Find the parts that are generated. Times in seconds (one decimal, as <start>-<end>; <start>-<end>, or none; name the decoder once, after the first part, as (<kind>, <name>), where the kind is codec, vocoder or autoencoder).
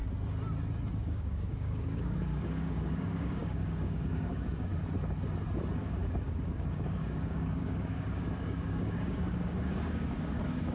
1.0-4.7 (codec, DAC); 5.8-10.7